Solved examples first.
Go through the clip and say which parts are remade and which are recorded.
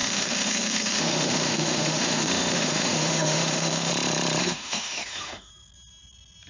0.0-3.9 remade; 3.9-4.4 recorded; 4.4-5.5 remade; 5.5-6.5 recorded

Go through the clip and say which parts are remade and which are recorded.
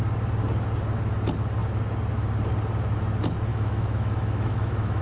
0.0-3.5 recorded; 3.5-5.0 remade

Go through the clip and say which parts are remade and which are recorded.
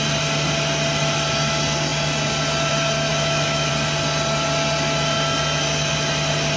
0.0-3.1 recorded; 3.1-3.7 remade; 3.7-6.6 recorded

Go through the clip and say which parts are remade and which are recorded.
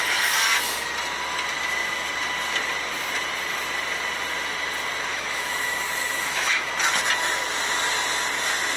0.0-5.1 recorded; 5.1-6.7 remade; 6.7-8.8 recorded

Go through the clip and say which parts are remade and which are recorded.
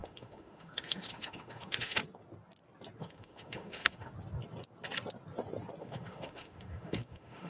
0.0-2.0 remade; 2.0-3.0 recorded; 3.0-4.1 remade; 4.1-5.8 recorded; 5.8-7.5 remade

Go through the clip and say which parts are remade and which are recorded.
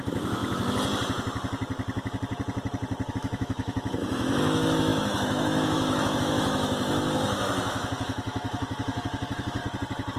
0.0-0.4 remade; 0.4-3.1 recorded; 3.1-9.6 remade; 9.6-10.2 recorded